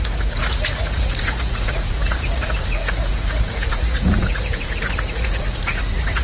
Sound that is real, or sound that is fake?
fake